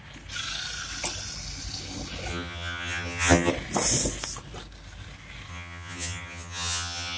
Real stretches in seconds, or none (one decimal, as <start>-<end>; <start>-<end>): 0.0-2.3; 3.5-5.5